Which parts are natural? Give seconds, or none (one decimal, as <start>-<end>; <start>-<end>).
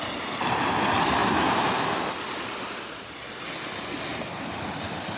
0.0-4.1